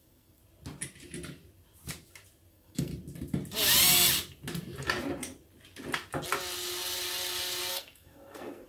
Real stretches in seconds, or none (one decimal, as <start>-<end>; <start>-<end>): 0.4-2.5; 2.9-7.7